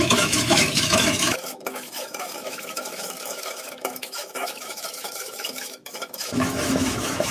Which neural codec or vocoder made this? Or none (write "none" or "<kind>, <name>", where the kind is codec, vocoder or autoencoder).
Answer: autoencoder, DAC-VAE